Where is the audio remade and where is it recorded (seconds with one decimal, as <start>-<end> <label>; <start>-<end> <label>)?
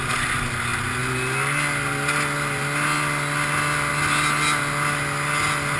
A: 0.0-5.8 recorded